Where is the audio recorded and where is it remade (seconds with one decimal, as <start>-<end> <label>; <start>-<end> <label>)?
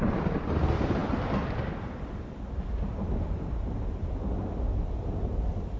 0.0-5.8 recorded